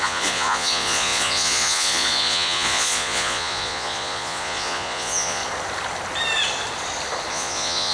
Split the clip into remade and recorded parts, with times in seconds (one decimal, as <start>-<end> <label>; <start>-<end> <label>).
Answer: 0.0-5.4 remade; 5.4-7.3 recorded; 7.3-7.9 remade